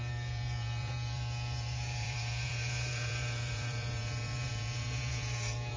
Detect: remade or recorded remade